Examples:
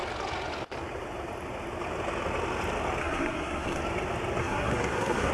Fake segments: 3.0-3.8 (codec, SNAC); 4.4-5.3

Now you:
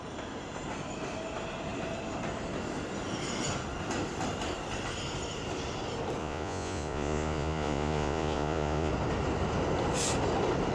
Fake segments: 6.2-8.9 (vocoder, Vocos)

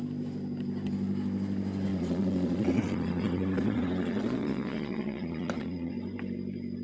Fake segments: 1.9-5.9 (vocoder, Vocos)

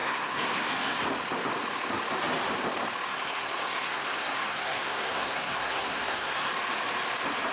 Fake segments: 0.0-0.7 (codec, SNAC); 3.1-6.5

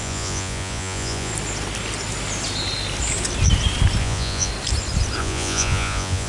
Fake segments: 0.0-1.3 (vocoder, Vocos); 4.0-4.5; 5.2-6.3